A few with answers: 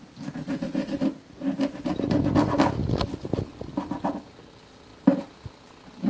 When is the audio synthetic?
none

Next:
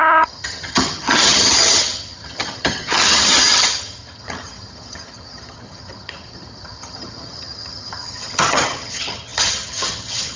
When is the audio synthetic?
0.0-10.4 (vocoder, HiFi-GAN)

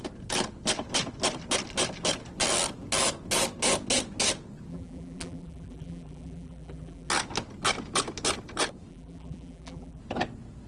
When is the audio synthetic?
4.7-7.1 (vocoder, BigVGAN v2); 8.9-10.0

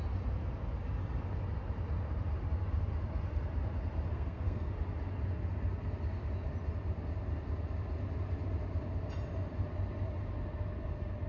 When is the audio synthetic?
4.1-4.7 (codec, SNAC)

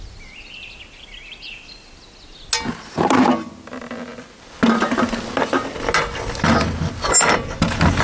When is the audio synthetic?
none

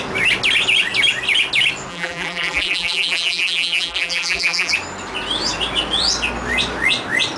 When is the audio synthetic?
1.9-4.7 (vocoder, BigVGAN v2)